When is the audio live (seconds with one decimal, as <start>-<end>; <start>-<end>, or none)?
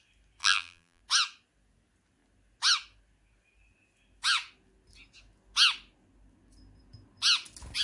0.0-0.4; 1.0-7.8